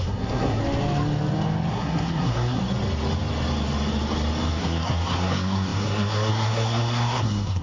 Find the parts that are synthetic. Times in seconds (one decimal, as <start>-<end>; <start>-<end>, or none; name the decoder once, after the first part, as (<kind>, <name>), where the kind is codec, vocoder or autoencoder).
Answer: 0.0-0.6 (codec, SNAC); 1.7-2.6; 4.5-7.6